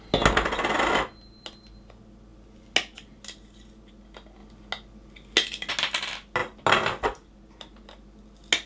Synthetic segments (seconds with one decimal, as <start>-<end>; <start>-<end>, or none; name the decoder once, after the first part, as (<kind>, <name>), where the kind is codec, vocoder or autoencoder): none